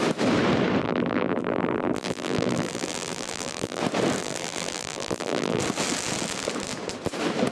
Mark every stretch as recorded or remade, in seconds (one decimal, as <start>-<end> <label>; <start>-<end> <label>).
0.0-0.8 recorded; 0.8-3.8 remade; 3.8-4.2 recorded; 4.2-5.6 remade; 5.6-7.5 recorded

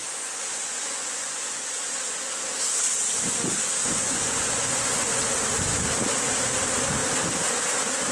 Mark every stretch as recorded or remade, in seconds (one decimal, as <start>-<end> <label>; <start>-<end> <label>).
0.0-1.9 remade; 1.9-3.8 recorded; 3.8-5.2 remade; 5.2-8.1 recorded